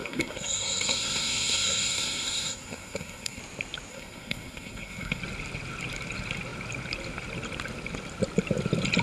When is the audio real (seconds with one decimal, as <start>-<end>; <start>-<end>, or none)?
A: 3.4-3.9; 5.2-9.0